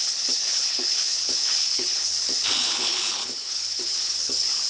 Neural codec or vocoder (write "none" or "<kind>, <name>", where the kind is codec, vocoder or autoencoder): codec, HILCodec